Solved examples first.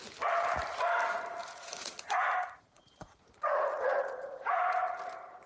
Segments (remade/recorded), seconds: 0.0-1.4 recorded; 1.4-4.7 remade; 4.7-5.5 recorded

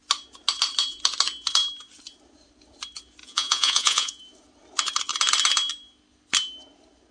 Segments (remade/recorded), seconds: 0.0-3.2 recorded; 3.2-4.2 remade; 4.2-7.1 recorded

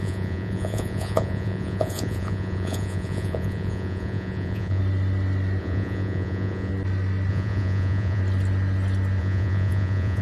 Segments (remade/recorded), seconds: 0.0-4.8 remade; 4.8-5.6 recorded; 5.6-6.7 remade; 6.7-7.3 recorded; 7.3-8.2 remade; 8.2-9.2 recorded; 9.2-10.2 remade

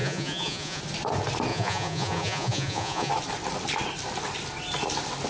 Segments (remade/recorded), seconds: 0.0-0.8 remade; 0.8-1.5 recorded; 1.5-3.1 remade; 3.1-5.3 recorded

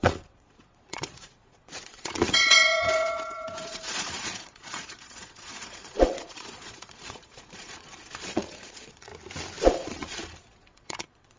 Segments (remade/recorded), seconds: 0.0-9.1 remade; 9.1-9.6 recorded; 9.6-11.4 remade